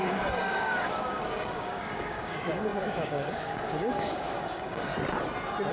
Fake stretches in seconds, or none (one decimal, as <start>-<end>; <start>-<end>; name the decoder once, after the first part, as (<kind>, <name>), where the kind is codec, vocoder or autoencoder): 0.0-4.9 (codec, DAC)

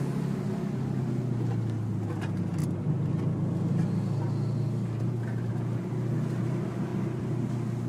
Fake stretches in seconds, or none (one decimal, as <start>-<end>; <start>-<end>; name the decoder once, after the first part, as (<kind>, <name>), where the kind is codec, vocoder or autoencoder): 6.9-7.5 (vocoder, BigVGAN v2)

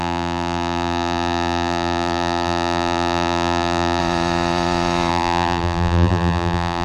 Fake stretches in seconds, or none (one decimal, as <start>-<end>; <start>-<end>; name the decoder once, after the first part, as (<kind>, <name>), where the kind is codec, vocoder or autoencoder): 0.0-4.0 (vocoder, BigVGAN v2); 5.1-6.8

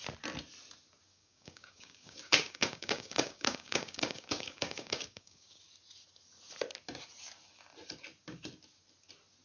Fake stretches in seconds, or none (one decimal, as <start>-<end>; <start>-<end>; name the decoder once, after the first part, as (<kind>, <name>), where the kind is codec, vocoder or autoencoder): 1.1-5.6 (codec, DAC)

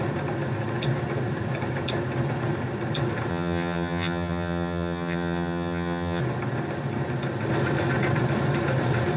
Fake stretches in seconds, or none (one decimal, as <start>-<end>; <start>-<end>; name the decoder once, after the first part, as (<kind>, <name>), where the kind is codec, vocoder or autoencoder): 3.3-6.2 (vocoder, HiFi-GAN)

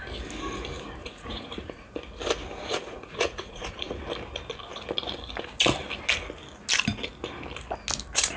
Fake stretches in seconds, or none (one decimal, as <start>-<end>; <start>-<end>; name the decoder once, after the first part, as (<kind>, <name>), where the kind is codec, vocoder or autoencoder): 1.0-1.9 (vocoder, Vocos); 2.6-4.0

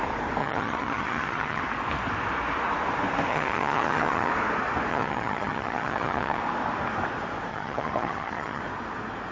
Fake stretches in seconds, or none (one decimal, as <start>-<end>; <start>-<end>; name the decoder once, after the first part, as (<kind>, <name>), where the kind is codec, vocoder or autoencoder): 0.4-1.6 (vocoder, HiFi-GAN); 3.3-4.3; 4.9-6.4; 7.5-8.6

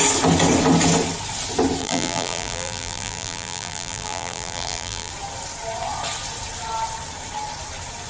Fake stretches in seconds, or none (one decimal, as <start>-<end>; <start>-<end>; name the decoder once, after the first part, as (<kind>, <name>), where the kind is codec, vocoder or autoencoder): 1.8-5.1 (vocoder, BigVGAN v2)